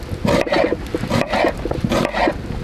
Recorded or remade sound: recorded